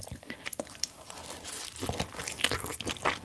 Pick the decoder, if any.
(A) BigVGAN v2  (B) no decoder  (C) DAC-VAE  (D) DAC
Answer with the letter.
B